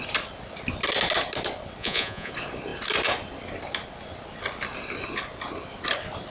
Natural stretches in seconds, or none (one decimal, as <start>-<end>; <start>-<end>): 0.0-1.8; 2.3-6.3

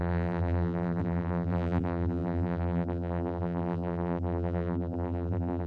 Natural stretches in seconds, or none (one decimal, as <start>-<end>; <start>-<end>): none